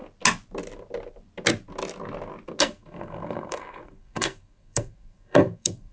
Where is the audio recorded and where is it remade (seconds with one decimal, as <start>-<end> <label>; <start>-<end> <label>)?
0.0-2.6 recorded; 2.6-5.9 remade